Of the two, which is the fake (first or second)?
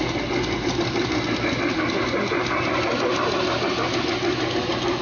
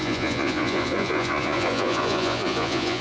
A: second